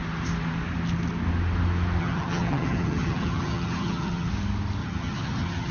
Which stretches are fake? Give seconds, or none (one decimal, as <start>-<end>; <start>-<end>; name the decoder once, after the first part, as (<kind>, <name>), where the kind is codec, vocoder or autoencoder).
2.0-4.3 (vocoder, HiFi-GAN); 4.8-5.7

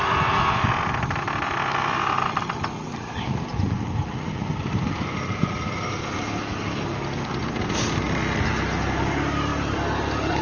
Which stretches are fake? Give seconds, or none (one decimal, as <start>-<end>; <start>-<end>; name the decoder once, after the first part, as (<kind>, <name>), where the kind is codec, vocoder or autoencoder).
none